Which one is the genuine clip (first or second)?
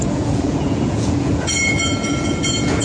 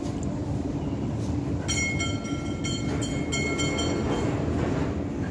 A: second